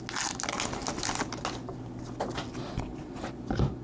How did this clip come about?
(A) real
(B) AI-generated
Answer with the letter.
A